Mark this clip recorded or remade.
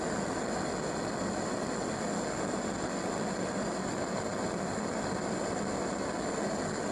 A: recorded